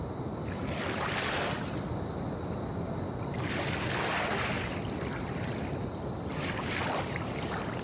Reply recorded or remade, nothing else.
recorded